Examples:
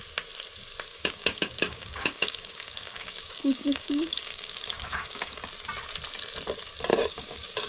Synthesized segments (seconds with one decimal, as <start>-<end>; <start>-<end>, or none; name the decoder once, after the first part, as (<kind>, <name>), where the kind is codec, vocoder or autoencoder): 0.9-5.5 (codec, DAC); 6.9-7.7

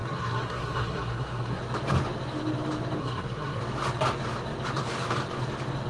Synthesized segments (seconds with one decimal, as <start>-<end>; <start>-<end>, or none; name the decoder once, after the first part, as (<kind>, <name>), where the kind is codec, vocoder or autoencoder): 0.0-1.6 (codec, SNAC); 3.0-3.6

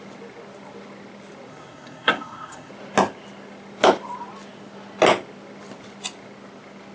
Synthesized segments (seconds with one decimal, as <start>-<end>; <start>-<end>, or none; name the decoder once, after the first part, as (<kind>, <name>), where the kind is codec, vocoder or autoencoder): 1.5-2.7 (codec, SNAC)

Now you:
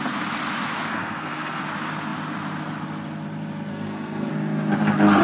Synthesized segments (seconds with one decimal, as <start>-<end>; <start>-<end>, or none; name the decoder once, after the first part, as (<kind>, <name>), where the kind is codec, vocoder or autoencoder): 0.9-1.6 (codec, SNAC); 3.7-4.3